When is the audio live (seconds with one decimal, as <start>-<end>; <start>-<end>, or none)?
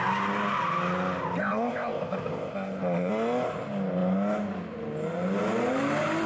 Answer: 0.0-1.4; 3.1-6.3